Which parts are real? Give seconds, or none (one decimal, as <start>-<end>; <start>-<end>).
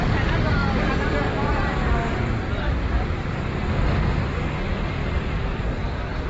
0.0-6.3